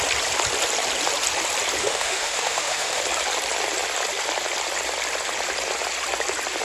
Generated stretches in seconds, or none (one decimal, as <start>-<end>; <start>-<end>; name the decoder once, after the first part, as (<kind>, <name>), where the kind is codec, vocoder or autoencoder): 1.8-3.0 (autoencoder, DAC-VAE)